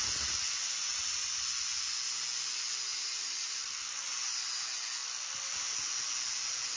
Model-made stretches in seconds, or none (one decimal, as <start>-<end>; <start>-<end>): 2.9-3.6